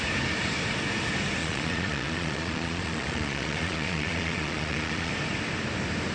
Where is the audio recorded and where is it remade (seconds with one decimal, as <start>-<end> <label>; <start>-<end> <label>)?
0.0-1.4 recorded; 1.4-5.1 remade; 5.1-6.1 recorded